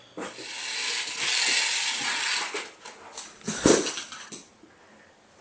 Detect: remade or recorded recorded